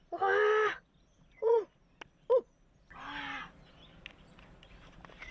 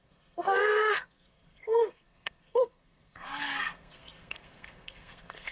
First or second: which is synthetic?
second